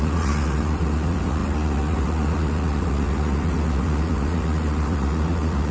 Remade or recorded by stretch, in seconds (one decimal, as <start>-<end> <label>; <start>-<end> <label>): 0.0-5.7 remade